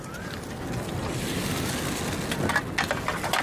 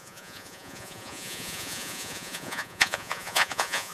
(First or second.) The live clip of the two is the first